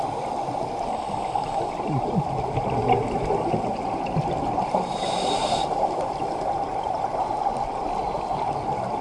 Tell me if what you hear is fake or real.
real